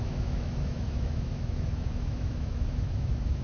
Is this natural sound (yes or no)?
no